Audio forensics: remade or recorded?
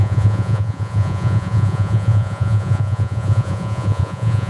remade